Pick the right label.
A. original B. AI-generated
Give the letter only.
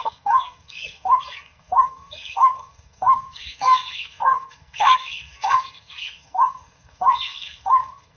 B